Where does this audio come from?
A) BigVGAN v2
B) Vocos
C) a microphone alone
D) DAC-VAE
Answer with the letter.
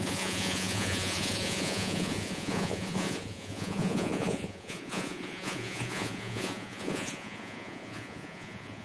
B